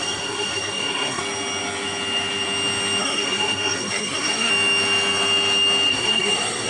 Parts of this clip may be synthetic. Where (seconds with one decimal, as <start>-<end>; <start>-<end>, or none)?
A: 0.0-1.2; 3.0-4.5; 5.9-6.7